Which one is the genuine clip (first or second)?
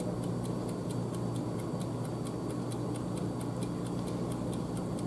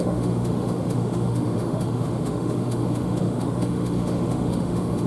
first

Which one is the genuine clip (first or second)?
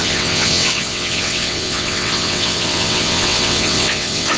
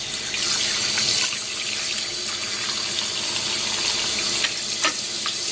second